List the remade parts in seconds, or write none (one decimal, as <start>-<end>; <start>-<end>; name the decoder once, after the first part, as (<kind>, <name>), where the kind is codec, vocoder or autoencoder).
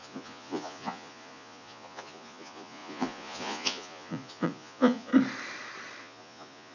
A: 0.0-5.1 (vocoder, Vocos); 6.0-6.7